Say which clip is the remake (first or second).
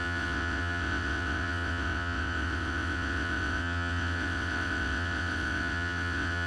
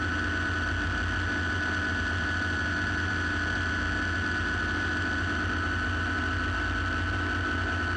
first